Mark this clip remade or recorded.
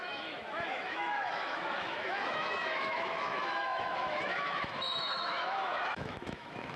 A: remade